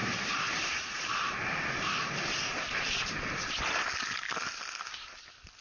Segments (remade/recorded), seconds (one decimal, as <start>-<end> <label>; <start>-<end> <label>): 0.0-1.6 remade; 1.6-5.6 recorded